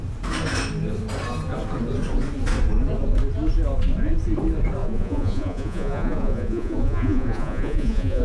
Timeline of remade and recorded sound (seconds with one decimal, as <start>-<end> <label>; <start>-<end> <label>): 0.0-4.8 recorded; 4.8-8.2 remade